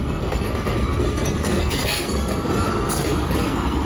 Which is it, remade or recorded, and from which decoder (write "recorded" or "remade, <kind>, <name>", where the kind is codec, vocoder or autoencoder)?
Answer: remade, codec, SNAC